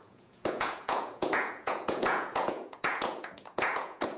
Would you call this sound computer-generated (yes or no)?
yes